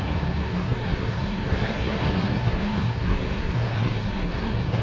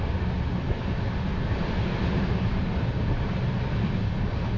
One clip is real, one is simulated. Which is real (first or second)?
second